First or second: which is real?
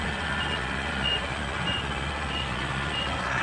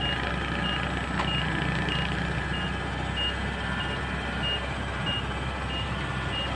second